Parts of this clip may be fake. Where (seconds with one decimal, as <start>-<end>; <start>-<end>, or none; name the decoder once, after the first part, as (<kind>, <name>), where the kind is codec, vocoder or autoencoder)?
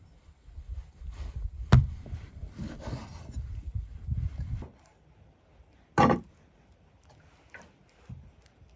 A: none